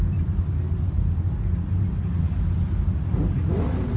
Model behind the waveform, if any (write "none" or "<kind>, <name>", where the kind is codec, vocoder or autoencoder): none